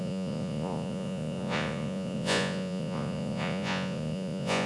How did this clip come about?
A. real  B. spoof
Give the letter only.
B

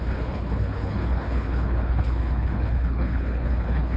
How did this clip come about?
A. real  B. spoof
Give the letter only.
B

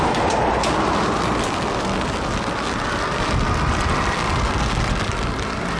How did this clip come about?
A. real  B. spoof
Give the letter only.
A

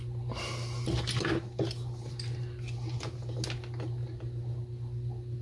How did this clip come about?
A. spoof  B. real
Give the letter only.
B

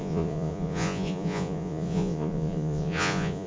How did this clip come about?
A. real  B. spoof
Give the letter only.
B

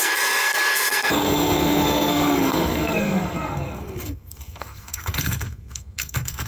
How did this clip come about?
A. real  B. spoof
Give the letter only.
B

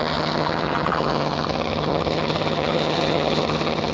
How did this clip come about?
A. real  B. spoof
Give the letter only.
B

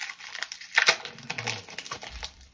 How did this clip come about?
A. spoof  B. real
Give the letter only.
B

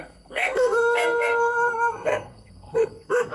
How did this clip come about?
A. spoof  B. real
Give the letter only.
A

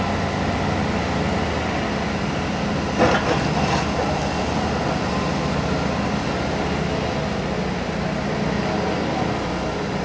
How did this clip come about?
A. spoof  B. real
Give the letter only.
B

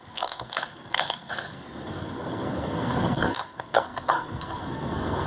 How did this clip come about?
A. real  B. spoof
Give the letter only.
B